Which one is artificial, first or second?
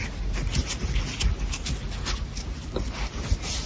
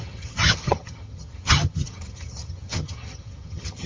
second